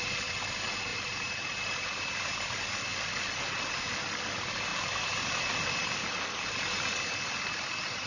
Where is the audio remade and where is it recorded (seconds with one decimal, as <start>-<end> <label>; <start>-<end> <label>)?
0.0-0.9 recorded; 0.9-1.6 remade; 1.6-4.7 recorded; 4.7-5.2 remade; 5.2-8.1 recorded